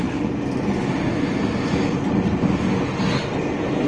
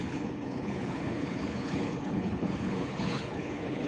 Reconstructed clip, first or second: second